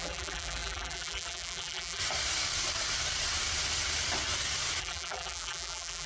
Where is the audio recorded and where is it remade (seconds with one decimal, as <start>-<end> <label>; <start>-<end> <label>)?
0.0-2.0 remade; 2.0-4.8 recorded; 4.8-6.1 remade